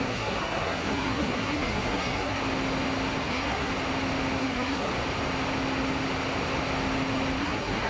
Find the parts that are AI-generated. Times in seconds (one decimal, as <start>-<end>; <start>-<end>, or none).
0.0-2.4; 3.2-3.7; 4.4-4.9; 7.4-7.9